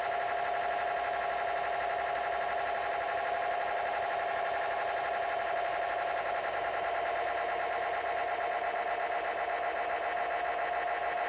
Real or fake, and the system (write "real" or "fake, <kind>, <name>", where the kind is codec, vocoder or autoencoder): real